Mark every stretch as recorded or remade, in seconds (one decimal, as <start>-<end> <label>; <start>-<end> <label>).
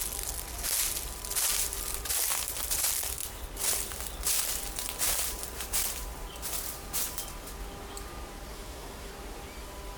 0.0-8.5 recorded; 8.5-9.1 remade; 9.1-10.0 recorded